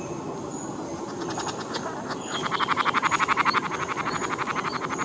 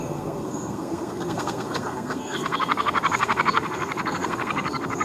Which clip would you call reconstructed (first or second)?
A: second